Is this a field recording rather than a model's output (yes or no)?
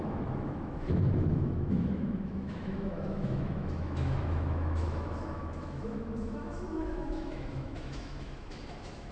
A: no